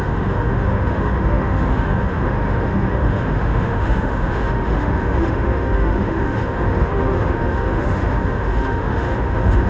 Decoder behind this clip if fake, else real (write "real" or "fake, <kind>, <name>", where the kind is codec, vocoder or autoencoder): fake, autoencoder, DAC-VAE